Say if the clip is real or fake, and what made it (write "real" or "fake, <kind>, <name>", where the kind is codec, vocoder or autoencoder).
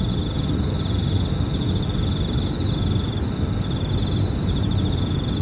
real